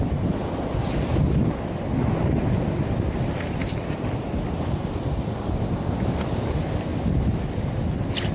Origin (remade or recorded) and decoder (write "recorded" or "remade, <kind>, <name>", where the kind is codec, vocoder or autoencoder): recorded